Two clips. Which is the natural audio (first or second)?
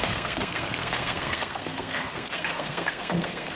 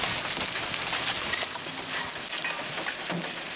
second